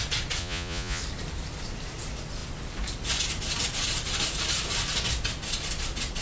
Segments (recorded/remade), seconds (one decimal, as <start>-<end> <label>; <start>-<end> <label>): 0.0-0.4 recorded; 0.4-1.0 remade; 1.0-6.2 recorded